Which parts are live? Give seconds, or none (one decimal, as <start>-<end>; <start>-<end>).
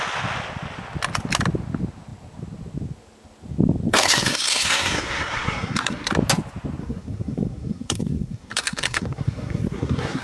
0.0-3.9; 6.1-6.8